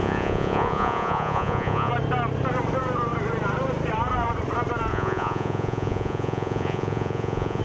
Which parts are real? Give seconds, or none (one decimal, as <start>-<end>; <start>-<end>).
1.9-4.9